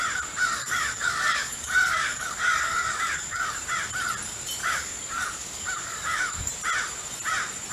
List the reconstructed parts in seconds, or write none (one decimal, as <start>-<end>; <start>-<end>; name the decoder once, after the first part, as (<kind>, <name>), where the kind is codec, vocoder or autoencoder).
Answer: 0.6-3.6 (codec, DAC); 4.6-6.5